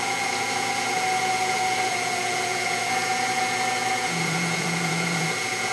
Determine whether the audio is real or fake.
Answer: fake